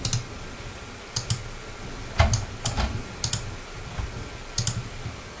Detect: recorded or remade recorded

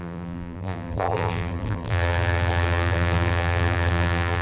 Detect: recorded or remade remade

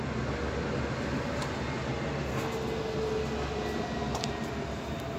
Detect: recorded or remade recorded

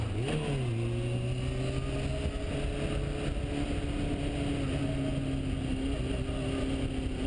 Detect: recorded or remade recorded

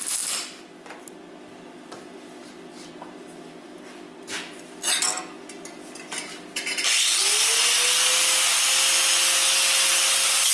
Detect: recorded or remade recorded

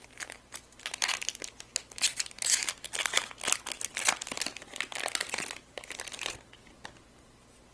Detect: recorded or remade recorded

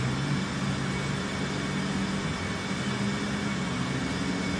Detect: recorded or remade recorded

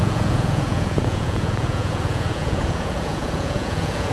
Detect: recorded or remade remade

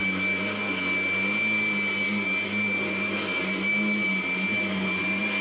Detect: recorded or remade recorded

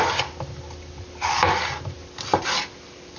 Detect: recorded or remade recorded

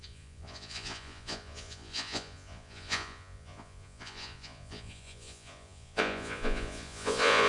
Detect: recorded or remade remade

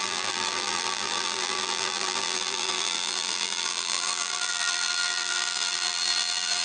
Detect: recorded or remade remade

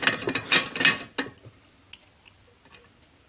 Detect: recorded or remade recorded